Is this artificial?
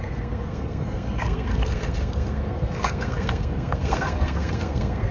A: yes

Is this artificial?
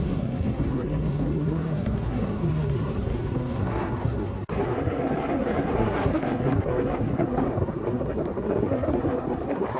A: yes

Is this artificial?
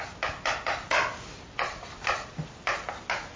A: no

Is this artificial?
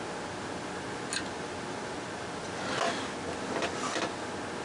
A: no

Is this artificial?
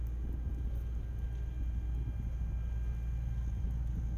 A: no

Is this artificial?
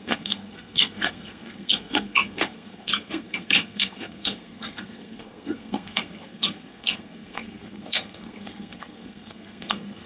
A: yes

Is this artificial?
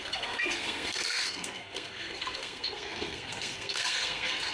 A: yes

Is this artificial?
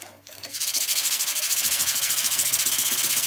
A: yes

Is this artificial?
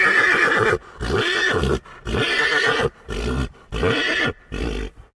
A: no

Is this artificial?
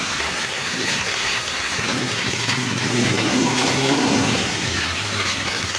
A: yes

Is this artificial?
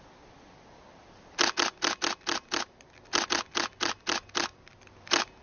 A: no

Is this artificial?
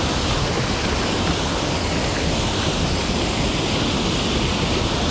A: no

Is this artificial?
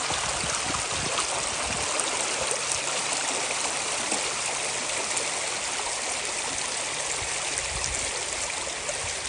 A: no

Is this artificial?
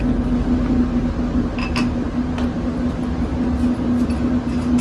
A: no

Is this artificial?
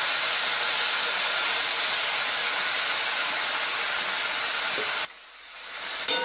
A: no